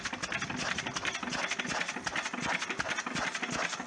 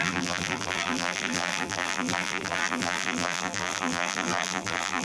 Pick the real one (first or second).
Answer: first